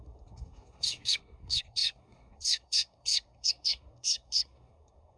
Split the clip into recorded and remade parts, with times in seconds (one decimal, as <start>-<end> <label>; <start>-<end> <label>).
0.0-5.2 remade